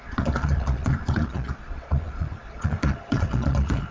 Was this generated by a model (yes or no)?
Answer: yes